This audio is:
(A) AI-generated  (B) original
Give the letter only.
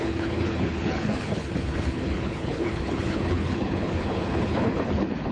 A